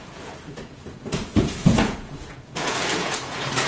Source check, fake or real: fake